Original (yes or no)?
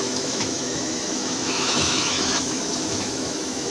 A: no